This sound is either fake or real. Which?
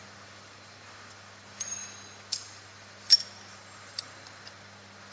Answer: fake